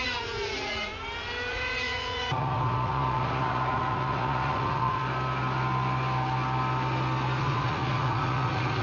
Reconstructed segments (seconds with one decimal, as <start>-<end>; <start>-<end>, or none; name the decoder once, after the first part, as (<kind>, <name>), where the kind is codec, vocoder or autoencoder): 0.0-0.9 (vocoder, Vocos); 1.5-5.0; 7.4-8.8